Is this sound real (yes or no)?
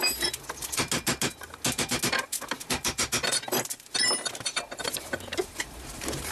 yes